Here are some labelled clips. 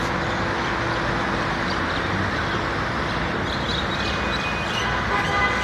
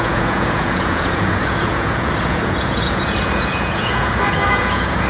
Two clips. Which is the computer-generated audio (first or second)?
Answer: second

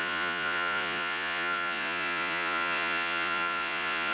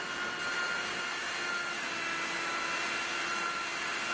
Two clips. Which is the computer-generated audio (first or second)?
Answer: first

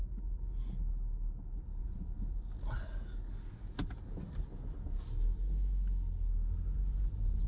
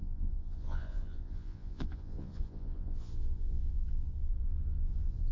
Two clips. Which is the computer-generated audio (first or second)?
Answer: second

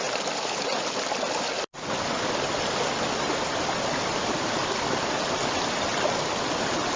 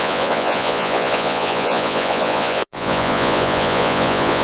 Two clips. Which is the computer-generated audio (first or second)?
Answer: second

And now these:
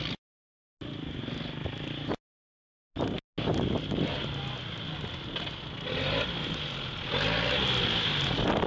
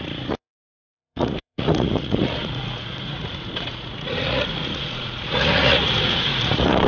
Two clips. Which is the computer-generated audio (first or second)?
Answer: second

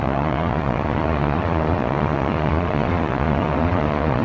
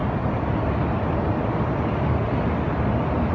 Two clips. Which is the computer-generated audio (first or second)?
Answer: first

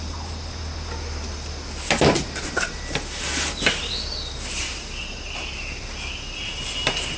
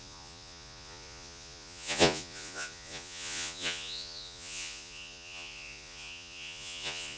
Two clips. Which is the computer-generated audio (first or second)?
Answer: second